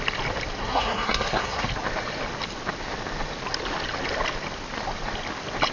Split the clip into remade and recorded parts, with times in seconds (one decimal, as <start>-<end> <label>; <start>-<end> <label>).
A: 0.0-0.6 recorded; 0.6-1.7 remade; 1.7-5.7 recorded